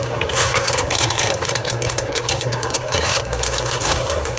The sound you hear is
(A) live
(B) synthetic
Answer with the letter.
B